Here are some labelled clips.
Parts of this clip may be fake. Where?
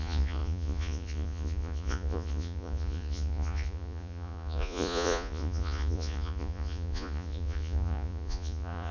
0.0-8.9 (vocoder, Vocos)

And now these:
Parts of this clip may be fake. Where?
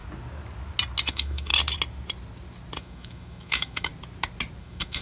1.1-1.5 (autoencoder, DAC-VAE); 2.8-3.9; 4.6-5.0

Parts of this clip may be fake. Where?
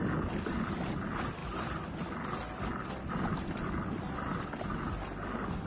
none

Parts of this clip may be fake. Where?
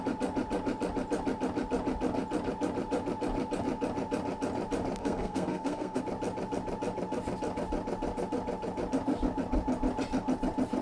5.0-6.0 (codec, SNAC)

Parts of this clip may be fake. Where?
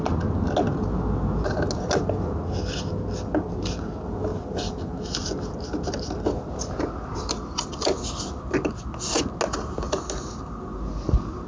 none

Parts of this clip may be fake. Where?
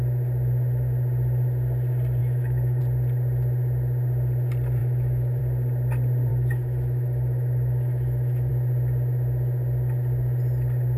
2.2-2.8 (autoencoder, DAC-VAE); 4.8-5.4; 6.3-8.5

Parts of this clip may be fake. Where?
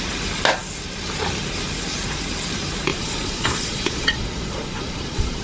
2.9-5.4 (vocoder, Vocos)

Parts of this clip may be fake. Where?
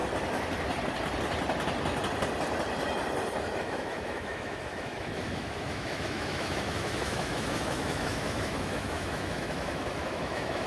3.6-10.7 (autoencoder, DAC-VAE)